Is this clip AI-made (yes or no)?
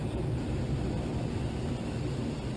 no